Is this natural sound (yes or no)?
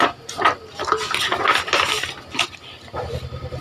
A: yes